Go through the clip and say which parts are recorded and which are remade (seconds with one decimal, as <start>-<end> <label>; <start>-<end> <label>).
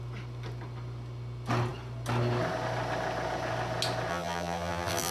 0.0-4.1 recorded; 4.1-5.1 remade